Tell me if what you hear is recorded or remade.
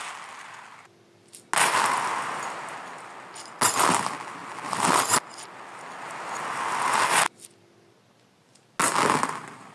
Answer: recorded